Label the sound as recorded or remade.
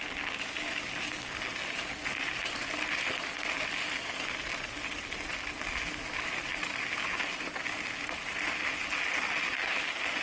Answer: recorded